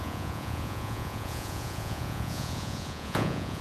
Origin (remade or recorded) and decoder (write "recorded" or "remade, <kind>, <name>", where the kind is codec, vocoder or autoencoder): remade, vocoder, Vocos